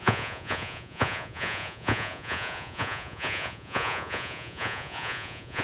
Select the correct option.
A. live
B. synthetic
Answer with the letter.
B